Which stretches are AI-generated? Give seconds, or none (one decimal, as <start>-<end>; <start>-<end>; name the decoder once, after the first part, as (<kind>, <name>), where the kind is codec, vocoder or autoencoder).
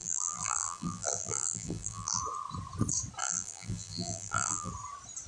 0.0-2.2 (vocoder, BigVGAN v2); 3.2-4.7